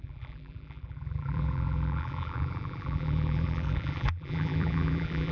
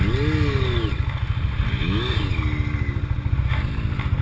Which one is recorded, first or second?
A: second